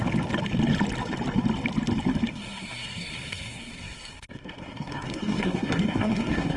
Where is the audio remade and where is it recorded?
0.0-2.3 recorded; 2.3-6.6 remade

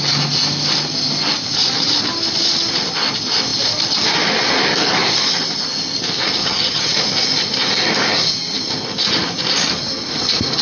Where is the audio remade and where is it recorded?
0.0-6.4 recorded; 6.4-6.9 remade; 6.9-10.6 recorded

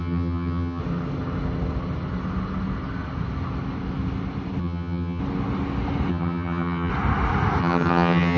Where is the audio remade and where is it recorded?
0.0-0.8 remade; 0.8-4.6 recorded; 4.6-5.2 remade; 5.2-6.1 recorded; 6.1-6.9 remade; 6.9-7.6 recorded; 7.6-8.4 remade

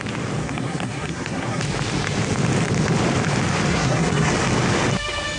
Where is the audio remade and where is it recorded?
0.0-0.4 recorded; 0.4-1.6 remade; 1.6-3.7 recorded; 3.7-4.3 remade; 4.3-5.4 recorded

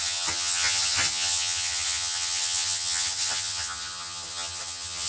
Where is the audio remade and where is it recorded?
0.0-5.1 remade

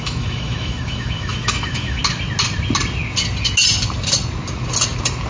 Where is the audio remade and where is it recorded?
0.0-2.0 remade; 2.0-5.3 recorded